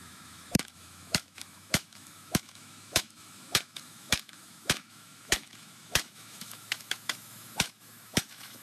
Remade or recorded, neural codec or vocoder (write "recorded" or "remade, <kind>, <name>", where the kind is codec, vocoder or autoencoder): remade, autoencoder, DAC-VAE